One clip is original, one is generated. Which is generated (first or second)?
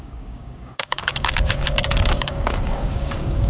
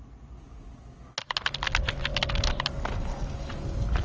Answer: first